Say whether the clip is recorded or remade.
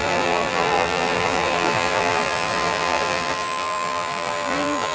remade